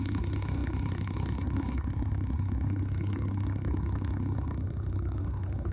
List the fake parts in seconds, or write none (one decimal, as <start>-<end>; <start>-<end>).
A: 0.0-5.7